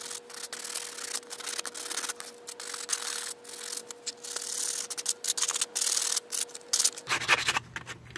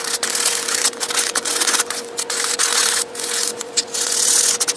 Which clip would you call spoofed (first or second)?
second